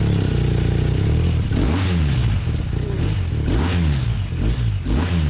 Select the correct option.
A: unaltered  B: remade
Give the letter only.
A